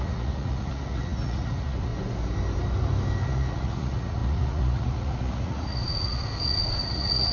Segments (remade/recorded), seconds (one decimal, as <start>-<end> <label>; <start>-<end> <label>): 0.0-1.9 remade; 1.9-3.2 recorded; 3.2-7.3 remade